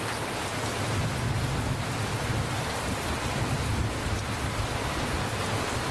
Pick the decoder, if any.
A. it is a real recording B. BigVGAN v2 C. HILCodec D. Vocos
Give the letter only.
A